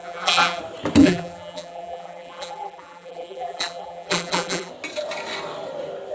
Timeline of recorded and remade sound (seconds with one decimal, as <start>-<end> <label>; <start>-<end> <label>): 0.0-0.6 remade; 0.6-1.0 recorded; 1.0-4.7 remade; 4.7-6.1 recorded